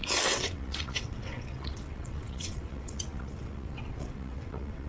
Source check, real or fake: fake